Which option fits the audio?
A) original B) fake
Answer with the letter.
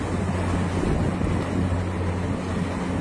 A